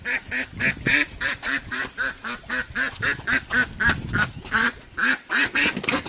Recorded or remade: recorded